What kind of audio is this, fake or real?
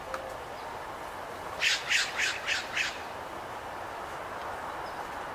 real